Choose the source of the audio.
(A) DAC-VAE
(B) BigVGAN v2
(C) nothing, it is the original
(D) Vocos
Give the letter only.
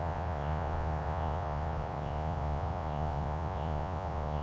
D